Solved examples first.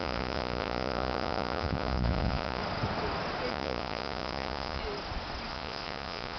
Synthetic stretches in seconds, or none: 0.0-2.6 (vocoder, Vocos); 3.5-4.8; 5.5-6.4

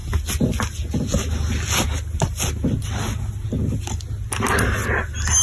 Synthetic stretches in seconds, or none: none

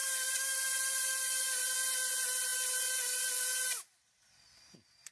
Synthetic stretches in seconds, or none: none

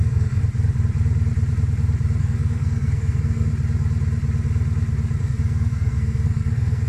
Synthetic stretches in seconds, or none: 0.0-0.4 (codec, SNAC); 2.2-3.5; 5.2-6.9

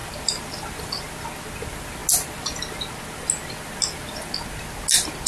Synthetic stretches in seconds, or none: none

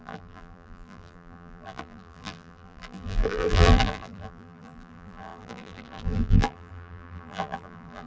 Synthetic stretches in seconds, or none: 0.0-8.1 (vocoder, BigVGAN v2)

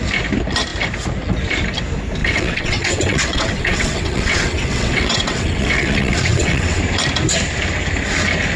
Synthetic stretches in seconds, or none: 2.2-6.8 (vocoder, WaveNeXt)

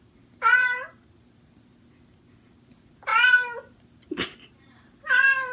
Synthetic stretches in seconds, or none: none